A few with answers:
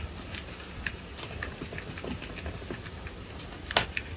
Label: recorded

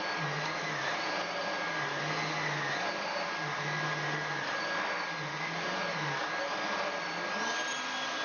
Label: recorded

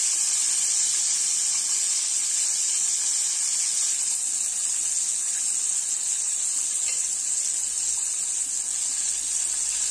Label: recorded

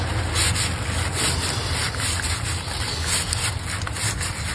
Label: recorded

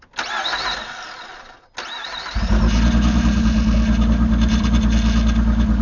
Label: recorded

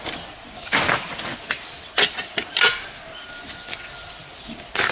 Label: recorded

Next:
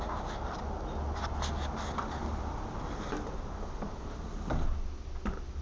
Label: recorded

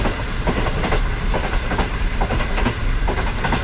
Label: recorded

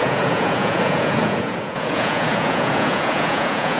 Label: remade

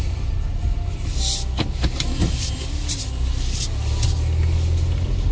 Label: recorded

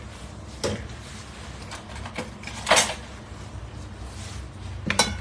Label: recorded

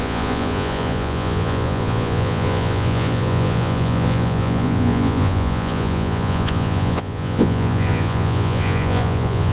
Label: remade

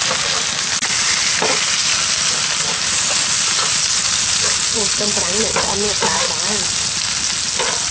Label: recorded